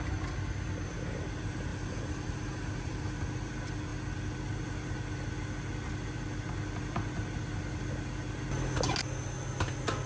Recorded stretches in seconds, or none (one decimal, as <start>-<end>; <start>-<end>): 0.0-1.7; 3.2-10.1